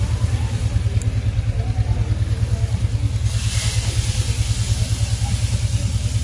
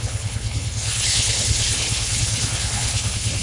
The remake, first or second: second